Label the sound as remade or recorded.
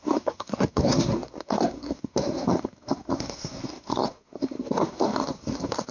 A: remade